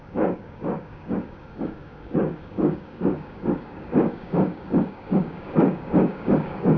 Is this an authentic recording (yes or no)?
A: no